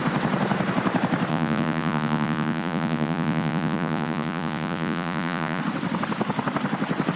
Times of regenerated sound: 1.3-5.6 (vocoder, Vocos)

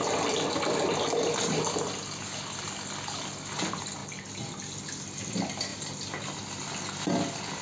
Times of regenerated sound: none